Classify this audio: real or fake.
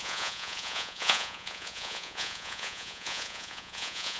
fake